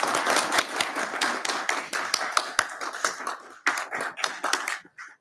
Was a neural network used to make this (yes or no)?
no